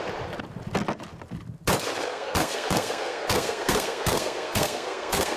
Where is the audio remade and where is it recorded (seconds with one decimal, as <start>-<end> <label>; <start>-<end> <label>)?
0.0-2.1 recorded; 2.1-5.4 remade